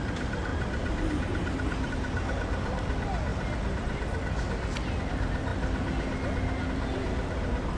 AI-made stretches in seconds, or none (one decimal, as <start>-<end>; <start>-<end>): none